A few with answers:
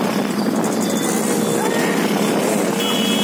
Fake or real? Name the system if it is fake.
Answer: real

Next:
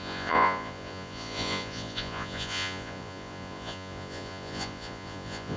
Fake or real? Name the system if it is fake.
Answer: fake, vocoder, Vocos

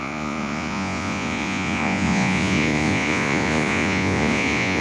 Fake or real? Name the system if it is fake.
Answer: fake, vocoder, Vocos